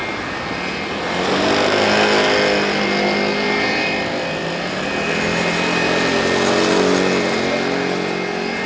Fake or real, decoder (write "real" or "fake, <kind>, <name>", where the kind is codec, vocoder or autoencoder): real